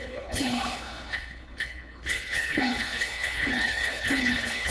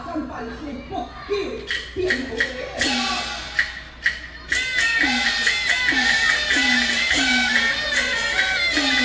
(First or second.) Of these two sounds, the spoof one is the first